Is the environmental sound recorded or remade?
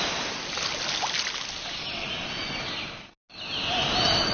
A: recorded